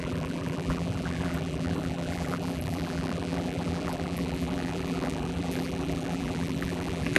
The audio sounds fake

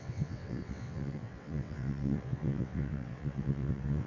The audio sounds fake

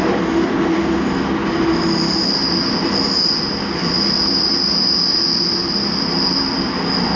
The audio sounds real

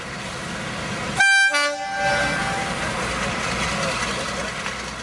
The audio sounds real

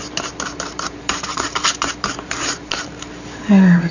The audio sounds fake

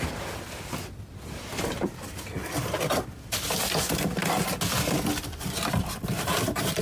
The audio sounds fake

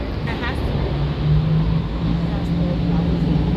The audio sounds real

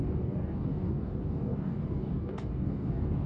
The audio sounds fake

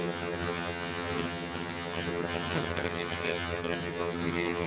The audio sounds fake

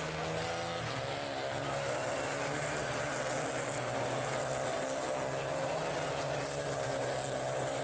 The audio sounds real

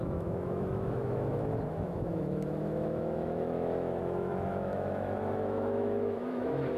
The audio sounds fake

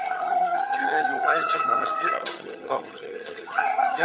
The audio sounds fake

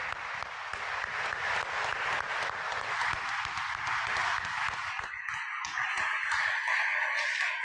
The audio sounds real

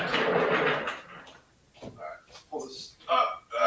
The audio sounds real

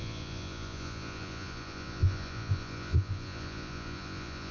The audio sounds fake